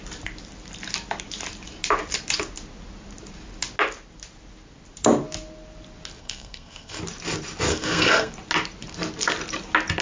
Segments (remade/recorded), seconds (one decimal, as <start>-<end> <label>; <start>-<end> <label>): 0.0-6.2 recorded; 6.2-7.0 remade; 7.0-7.7 recorded; 7.7-8.3 remade; 8.3-10.0 recorded